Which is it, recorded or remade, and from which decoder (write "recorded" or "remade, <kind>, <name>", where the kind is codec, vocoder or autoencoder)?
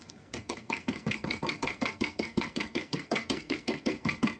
remade, codec, SNAC